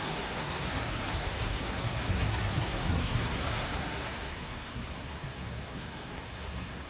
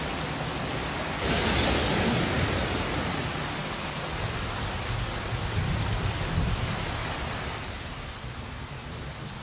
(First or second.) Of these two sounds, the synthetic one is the first